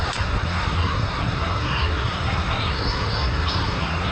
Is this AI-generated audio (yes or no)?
yes